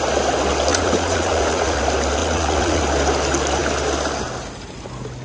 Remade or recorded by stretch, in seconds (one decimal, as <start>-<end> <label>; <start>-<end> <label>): 0.0-0.7 recorded; 0.7-1.8 remade; 1.8-2.2 recorded; 2.2-2.8 remade; 2.8-5.2 recorded